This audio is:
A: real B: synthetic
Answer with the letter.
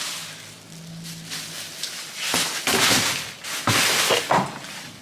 A